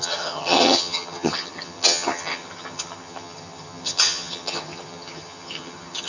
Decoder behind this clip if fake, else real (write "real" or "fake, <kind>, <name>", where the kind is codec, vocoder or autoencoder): fake, vocoder, HiFi-GAN